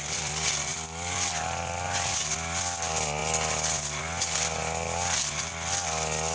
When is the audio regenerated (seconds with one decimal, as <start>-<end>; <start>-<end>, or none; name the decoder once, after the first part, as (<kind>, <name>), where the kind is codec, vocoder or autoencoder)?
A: none